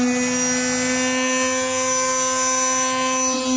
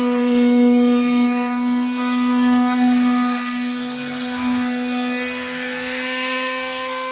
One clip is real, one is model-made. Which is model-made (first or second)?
second